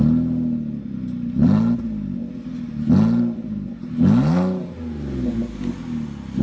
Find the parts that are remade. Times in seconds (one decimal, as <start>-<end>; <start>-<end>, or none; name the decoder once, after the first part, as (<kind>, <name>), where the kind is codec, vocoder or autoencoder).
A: none